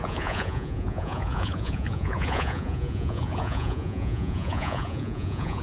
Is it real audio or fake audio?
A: fake